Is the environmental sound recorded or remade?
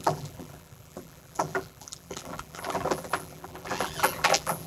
remade